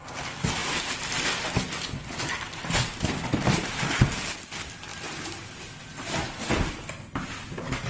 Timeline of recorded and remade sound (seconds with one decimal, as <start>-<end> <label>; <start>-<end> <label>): 0.0-7.9 recorded